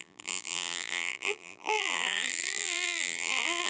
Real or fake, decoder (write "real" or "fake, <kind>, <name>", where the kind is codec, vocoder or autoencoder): fake, vocoder, BigVGAN v2